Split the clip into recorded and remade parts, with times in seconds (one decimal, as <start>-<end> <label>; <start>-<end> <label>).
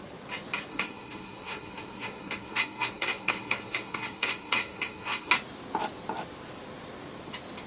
0.0-0.7 recorded; 0.7-5.3 remade; 5.3-7.7 recorded